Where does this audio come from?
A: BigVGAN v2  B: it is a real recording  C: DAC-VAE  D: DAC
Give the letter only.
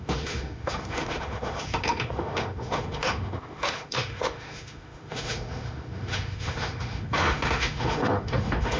C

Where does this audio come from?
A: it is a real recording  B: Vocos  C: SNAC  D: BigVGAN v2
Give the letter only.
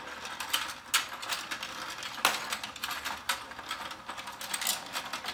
A